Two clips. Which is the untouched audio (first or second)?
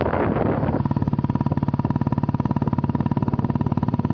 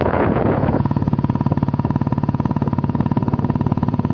first